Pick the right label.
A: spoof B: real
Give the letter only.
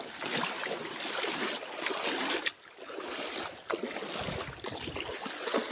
B